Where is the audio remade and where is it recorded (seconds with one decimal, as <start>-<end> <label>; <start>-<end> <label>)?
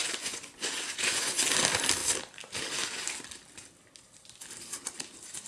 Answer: 0.0-1.4 remade; 1.4-5.5 recorded